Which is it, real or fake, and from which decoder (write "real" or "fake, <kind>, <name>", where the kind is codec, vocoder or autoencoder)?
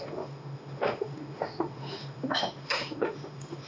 fake, autoencoder, DAC-VAE